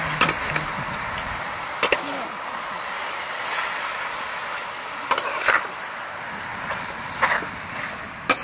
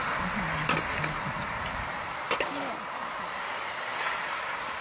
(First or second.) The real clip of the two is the first